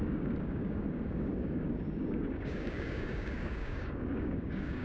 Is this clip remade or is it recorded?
remade